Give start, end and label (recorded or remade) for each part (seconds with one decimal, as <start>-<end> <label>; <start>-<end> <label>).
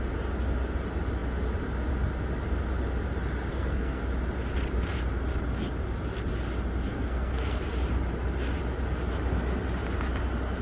0.0-3.5 recorded; 3.5-4.0 remade; 4.0-6.9 recorded; 6.9-7.6 remade; 7.6-10.6 recorded